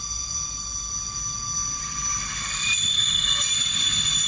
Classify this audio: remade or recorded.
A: recorded